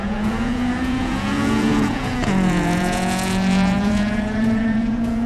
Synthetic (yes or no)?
yes